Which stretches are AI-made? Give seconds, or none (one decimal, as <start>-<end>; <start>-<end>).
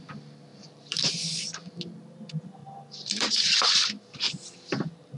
0.5-2.2; 2.6-3.3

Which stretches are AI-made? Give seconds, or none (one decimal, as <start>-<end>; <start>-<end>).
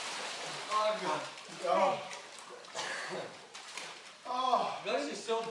0.0-4.6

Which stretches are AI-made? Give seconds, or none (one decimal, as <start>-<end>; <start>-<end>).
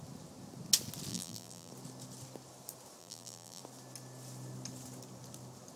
1.1-1.7; 3.0-3.6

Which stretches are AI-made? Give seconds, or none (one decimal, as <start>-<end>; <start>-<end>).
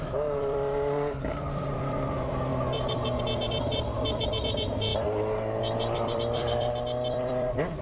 0.0-4.9; 5.6-7.8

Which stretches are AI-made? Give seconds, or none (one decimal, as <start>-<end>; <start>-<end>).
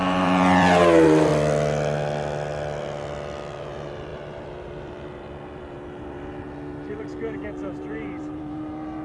0.0-1.3; 3.6-9.0